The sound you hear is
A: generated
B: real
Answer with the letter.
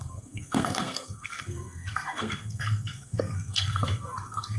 A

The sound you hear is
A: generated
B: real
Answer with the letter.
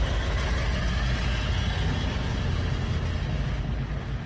B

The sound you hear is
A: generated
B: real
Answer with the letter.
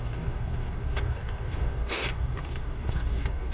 A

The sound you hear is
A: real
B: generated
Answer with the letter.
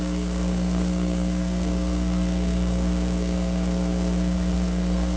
B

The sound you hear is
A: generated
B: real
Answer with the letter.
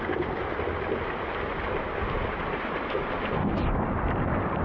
B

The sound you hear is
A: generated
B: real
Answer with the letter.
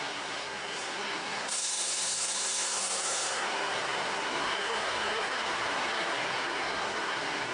A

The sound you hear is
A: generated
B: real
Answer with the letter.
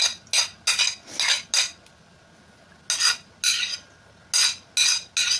B